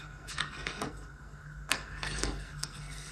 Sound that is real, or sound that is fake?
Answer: fake